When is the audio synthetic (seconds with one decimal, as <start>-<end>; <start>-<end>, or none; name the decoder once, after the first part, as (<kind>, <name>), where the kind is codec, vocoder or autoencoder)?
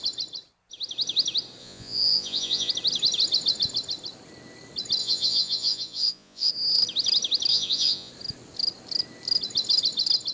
1.6-2.7 (vocoder, Vocos); 5.0-6.5; 7.5-8.1